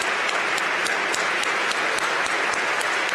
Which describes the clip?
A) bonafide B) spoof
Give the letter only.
A